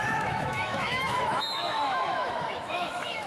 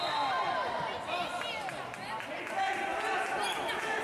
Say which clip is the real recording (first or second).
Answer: second